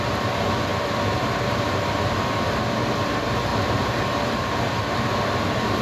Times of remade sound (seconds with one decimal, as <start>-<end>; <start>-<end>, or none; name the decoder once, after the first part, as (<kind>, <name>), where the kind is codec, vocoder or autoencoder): 0.7-2.5 (vocoder, BigVGAN v2); 3.5-5.8